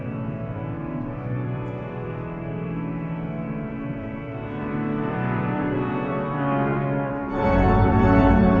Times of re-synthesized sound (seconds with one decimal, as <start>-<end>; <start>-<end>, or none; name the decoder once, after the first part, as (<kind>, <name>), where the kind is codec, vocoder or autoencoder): 0.0-8.6 (vocoder, BigVGAN v2)